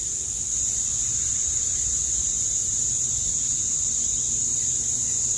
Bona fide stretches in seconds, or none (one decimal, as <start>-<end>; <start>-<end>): 0.0-1.1; 3.8-4.5